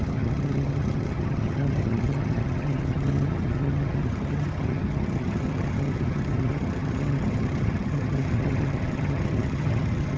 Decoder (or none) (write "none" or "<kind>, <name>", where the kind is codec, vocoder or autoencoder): vocoder, HiFi-GAN